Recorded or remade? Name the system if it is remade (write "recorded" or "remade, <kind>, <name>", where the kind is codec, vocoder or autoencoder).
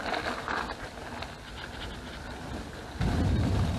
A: recorded